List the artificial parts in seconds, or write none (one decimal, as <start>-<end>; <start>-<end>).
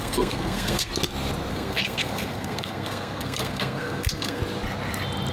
0.0-0.9; 1.5-4.4